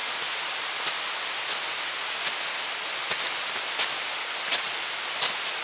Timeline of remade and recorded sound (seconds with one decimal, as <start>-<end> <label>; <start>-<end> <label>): 0.0-5.6 recorded